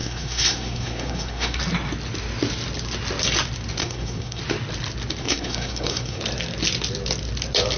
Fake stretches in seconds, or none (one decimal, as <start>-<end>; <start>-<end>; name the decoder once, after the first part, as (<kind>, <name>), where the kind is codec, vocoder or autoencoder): 0.0-1.6 (codec, SNAC); 3.8-4.4; 5.2-6.2